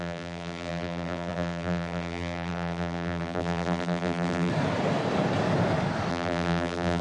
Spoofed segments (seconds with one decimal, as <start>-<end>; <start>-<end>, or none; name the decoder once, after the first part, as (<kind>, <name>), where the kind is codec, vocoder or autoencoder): 0.0-4.5 (vocoder, BigVGAN v2); 6.1-7.0